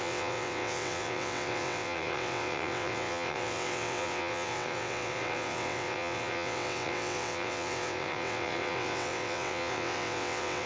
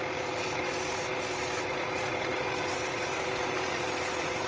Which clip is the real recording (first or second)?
second